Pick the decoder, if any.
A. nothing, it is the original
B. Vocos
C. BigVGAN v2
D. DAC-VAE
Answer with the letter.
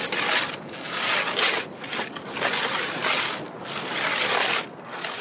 A